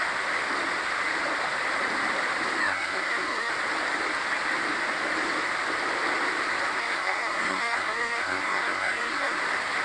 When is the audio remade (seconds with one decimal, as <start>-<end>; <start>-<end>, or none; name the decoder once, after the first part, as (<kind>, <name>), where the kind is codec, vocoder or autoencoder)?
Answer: 2.6-3.5 (codec, SNAC); 6.8-9.4